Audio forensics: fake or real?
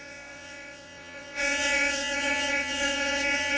fake